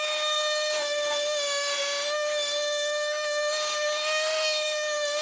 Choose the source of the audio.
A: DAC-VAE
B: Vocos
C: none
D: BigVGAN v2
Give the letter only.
A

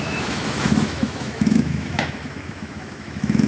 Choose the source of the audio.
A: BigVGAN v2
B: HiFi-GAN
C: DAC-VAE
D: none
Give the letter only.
C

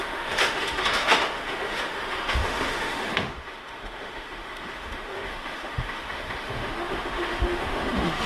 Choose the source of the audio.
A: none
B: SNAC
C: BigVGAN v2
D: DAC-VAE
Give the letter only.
D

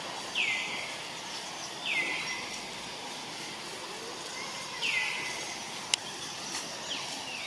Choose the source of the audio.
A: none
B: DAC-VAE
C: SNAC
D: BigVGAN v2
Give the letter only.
A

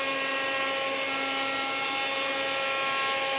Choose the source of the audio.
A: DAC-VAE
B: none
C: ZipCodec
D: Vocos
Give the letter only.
B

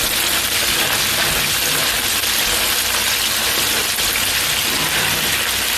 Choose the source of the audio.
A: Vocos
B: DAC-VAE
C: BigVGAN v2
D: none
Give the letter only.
D